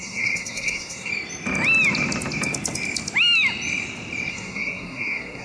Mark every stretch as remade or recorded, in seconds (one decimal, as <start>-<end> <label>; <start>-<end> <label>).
0.0-1.1 remade; 1.1-4.3 recorded; 4.3-5.4 remade

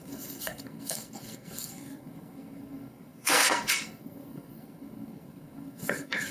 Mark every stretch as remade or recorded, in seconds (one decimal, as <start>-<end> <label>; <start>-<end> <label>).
0.0-6.3 remade

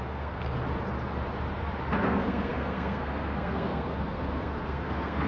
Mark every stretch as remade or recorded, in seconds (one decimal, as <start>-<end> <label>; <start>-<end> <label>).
0.0-0.4 remade; 0.4-2.0 recorded; 2.0-5.3 remade

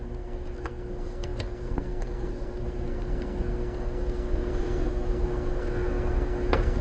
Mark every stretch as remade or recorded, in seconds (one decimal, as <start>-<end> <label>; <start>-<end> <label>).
0.0-6.8 remade

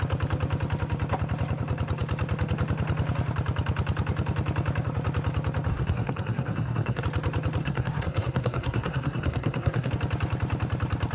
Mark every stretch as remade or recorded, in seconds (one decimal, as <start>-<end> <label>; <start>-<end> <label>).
0.0-5.7 recorded; 5.7-7.0 remade; 7.0-7.6 recorded; 7.6-9.9 remade; 9.9-11.1 recorded

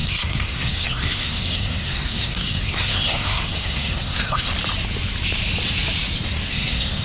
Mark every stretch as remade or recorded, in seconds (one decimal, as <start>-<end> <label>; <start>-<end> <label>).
0.0-4.5 remade; 4.5-6.5 recorded; 6.5-7.0 remade